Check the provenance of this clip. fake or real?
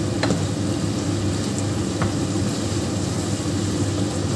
real